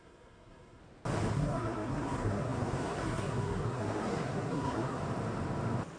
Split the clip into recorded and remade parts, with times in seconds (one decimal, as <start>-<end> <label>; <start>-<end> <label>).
0.0-0.8 remade; 0.8-1.3 recorded; 1.3-5.0 remade; 5.0-6.0 recorded